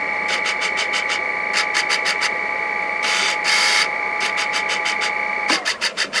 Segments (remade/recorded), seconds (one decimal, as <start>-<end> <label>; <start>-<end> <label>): 0.0-1.3 remade; 1.3-1.9 recorded; 1.9-6.2 remade

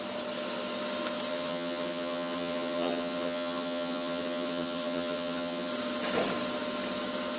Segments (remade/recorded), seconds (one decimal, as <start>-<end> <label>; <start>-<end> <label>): 0.0-1.3 recorded; 1.3-5.7 remade; 5.7-7.4 recorded

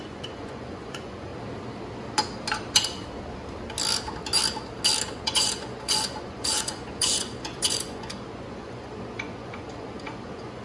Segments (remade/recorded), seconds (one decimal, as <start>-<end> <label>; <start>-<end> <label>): 0.0-1.3 remade; 1.3-5.2 recorded; 5.2-10.6 remade